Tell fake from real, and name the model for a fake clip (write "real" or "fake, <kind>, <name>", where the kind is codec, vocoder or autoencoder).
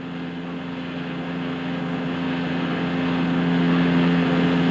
real